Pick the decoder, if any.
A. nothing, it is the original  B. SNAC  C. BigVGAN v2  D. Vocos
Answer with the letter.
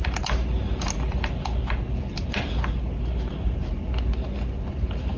A